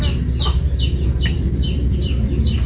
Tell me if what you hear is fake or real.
real